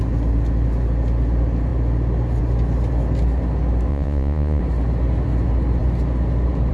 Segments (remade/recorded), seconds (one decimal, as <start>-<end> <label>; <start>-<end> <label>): 0.0-3.9 recorded; 3.9-4.6 remade; 4.6-6.7 recorded